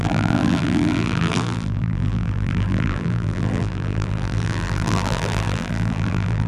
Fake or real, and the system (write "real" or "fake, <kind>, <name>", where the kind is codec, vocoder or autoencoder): fake, vocoder, BigVGAN v2